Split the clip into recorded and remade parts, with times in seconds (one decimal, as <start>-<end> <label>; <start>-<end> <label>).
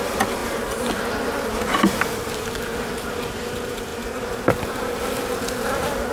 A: 0.0-6.1 recorded